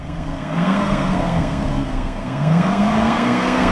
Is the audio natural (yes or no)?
no